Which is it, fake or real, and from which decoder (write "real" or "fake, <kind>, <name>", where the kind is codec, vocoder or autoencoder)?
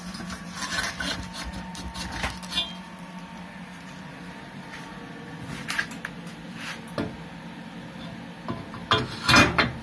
real